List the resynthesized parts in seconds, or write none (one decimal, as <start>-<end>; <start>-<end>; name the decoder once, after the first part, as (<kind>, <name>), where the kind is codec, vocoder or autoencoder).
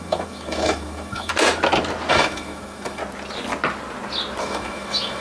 0.0-1.3 (autoencoder, DAC-VAE); 2.1-3.0; 4.4-5.2